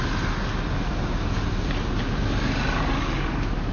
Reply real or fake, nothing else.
real